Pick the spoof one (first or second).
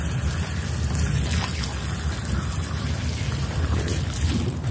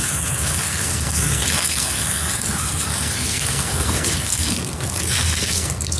second